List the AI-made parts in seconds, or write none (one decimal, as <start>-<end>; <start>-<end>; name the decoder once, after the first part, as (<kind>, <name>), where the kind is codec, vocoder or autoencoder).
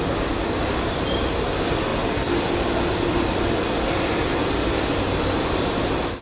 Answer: none